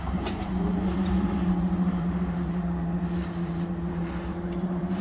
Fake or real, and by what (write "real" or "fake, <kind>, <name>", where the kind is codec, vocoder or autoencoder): fake, vocoder, BigVGAN v2